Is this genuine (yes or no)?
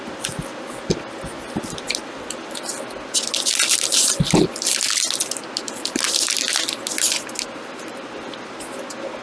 yes